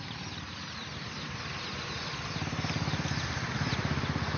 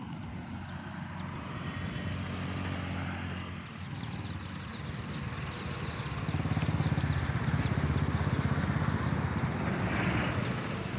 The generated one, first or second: first